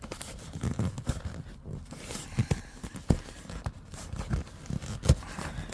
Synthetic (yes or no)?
no